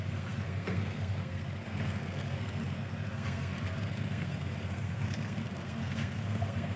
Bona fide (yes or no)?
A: no